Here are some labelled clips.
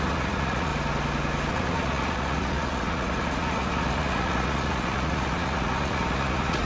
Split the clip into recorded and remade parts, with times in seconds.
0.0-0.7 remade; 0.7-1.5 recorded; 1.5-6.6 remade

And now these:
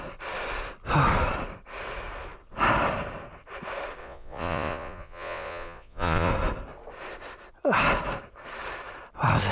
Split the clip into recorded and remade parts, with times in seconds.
0.0-4.0 recorded; 4.0-6.3 remade; 6.3-9.5 recorded